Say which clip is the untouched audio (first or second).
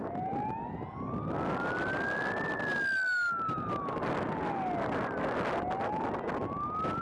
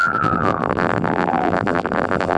first